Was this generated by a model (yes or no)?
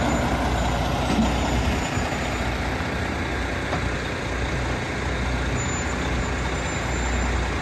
no